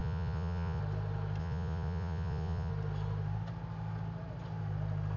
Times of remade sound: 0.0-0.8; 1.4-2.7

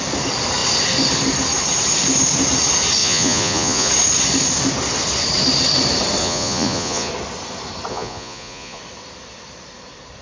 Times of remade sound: 3.0-3.9; 6.2-7.1; 7.9-8.8